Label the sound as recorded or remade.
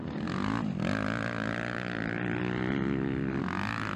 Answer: recorded